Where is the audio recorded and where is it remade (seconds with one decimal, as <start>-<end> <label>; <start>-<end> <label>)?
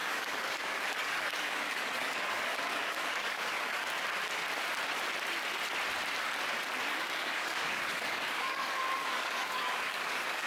0.0-3.8 remade; 3.8-6.9 recorded; 6.9-10.5 remade